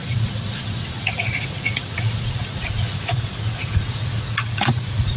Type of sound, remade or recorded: remade